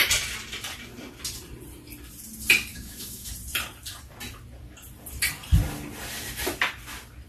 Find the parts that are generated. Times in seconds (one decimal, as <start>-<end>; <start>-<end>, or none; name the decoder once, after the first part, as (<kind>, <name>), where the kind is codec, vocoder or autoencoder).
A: 2.7-3.3 (autoencoder, DAC-VAE)